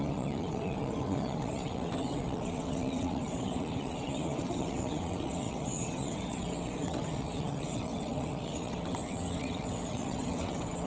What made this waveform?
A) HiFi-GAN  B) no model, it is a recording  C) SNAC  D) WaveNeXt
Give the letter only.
D